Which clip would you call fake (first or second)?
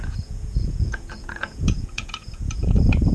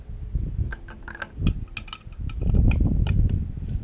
first